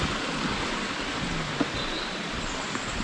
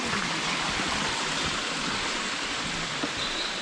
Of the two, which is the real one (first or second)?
first